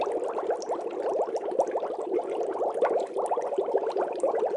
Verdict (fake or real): real